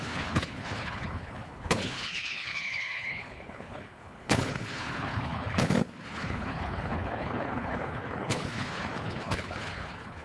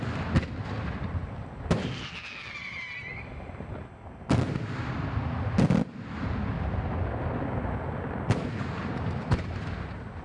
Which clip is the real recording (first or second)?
second